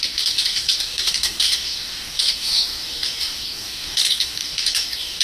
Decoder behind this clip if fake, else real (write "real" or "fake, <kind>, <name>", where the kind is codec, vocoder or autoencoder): fake, codec, DAC